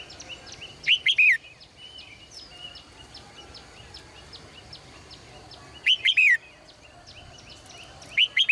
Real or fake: real